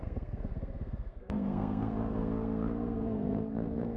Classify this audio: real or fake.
fake